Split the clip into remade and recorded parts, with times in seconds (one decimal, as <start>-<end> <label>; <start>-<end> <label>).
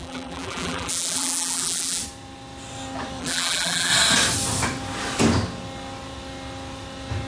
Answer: 0.0-2.0 remade; 2.0-3.2 recorded; 3.2-3.9 remade; 3.9-7.3 recorded